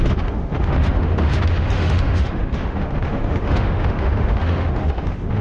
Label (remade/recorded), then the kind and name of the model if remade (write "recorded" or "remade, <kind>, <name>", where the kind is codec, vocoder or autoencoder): remade, autoencoder, DAC-VAE